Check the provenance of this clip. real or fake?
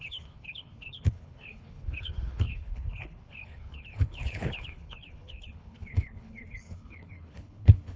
fake